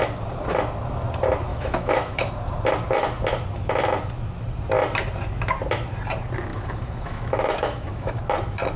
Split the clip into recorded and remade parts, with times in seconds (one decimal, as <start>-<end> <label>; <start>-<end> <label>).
0.0-1.5 recorded; 1.5-2.3 remade; 2.3-6.5 recorded; 6.5-8.2 remade; 8.2-8.8 recorded